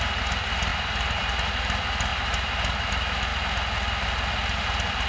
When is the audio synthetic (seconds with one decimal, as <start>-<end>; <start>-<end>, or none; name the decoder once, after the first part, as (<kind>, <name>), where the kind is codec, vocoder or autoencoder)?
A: none